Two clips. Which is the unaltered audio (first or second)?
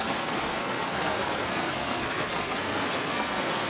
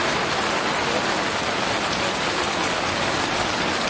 second